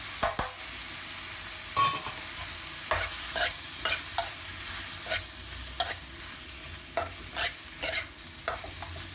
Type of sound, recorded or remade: recorded